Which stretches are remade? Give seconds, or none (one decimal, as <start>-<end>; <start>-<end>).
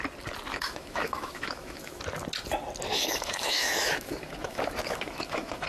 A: 0.5-2.0; 2.9-5.7